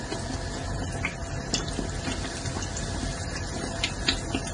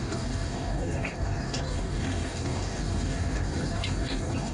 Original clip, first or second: first